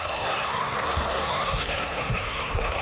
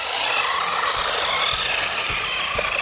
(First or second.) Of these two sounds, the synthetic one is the first